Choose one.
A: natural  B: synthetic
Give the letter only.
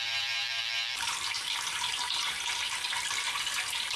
B